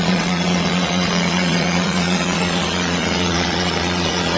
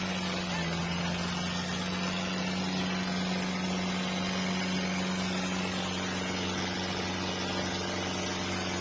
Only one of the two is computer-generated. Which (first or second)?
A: first